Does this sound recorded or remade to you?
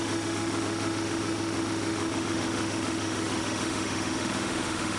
remade